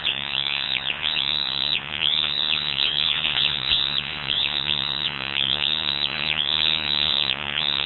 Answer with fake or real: fake